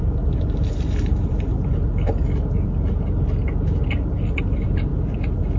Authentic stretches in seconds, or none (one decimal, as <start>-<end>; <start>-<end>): 1.5-4.1; 4.9-5.6